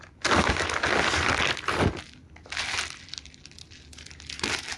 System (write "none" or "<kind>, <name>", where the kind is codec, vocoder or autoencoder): none